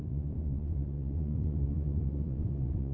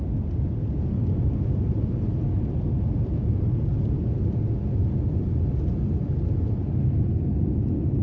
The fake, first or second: first